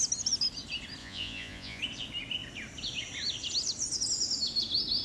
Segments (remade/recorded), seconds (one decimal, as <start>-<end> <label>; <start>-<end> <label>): 0.0-1.0 recorded; 1.0-1.8 remade; 1.8-5.0 recorded